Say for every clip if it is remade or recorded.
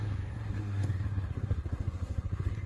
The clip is remade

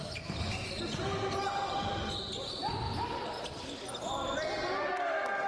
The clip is recorded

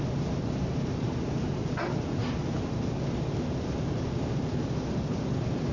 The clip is recorded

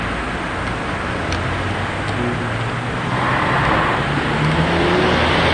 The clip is recorded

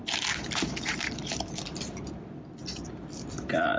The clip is recorded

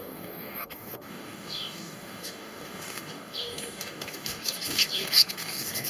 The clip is remade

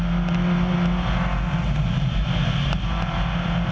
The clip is recorded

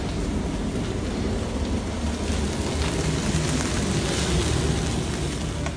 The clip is recorded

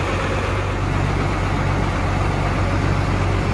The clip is recorded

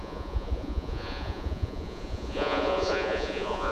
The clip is remade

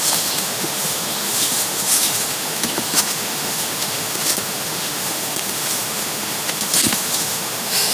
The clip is remade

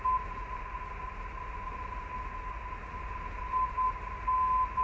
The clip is recorded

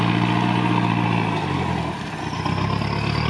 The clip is recorded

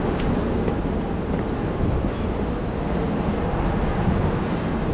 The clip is recorded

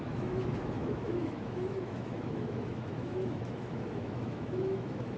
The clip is remade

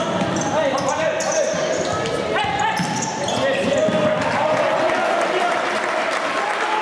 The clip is recorded